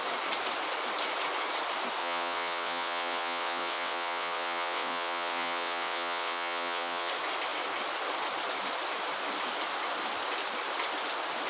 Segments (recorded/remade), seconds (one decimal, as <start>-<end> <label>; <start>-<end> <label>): 0.0-2.0 recorded; 2.0-7.1 remade; 7.1-11.5 recorded